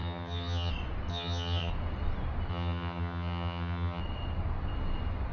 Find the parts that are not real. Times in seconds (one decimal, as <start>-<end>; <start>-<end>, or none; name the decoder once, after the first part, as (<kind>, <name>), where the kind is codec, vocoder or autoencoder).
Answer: 0.0-0.7 (vocoder, HiFi-GAN); 1.1-1.7; 2.5-4.0